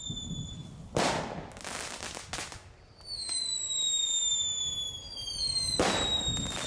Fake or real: real